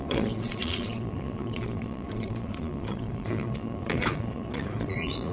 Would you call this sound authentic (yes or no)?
no